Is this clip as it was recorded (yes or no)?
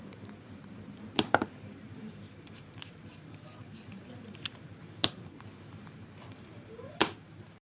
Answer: no